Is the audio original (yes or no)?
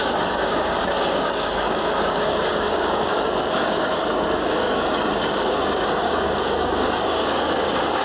no